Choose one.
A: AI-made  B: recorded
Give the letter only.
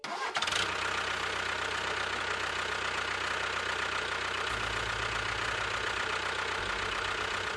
B